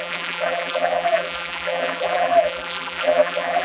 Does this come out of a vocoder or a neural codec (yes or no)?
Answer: yes